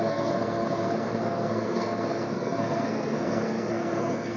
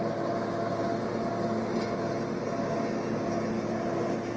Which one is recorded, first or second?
second